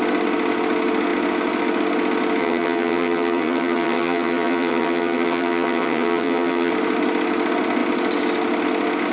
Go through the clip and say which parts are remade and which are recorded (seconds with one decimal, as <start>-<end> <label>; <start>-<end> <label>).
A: 0.0-2.4 recorded; 2.4-6.7 remade; 6.7-9.1 recorded